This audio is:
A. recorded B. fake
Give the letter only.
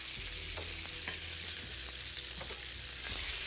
A